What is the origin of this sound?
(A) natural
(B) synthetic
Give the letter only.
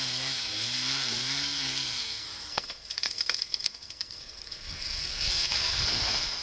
B